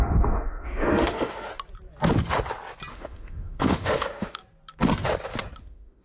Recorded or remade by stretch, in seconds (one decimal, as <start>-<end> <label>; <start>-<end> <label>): 0.0-1.5 remade; 1.5-2.9 recorded; 2.9-4.4 remade; 4.4-5.6 recorded; 5.6-6.0 remade